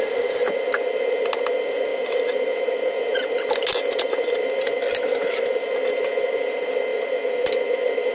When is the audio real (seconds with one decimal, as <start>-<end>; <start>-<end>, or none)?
0.0-8.1